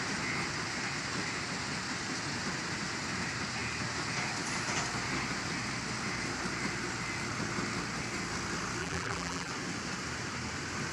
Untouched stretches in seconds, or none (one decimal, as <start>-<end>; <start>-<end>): 0.0-8.8; 9.5-10.9